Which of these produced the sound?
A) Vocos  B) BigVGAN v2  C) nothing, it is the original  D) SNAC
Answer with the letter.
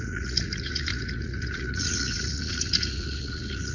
A